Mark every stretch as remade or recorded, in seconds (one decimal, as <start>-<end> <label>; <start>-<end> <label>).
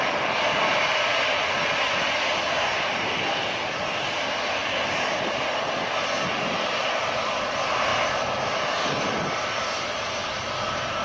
0.0-11.0 recorded